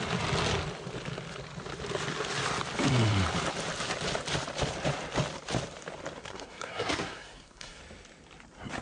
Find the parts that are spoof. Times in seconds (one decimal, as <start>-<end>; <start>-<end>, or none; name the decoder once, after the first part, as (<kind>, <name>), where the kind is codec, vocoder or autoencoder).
6.2-7.8 (codec, SNAC)